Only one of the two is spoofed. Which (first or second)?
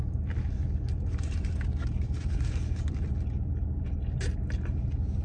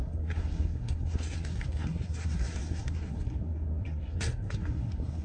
second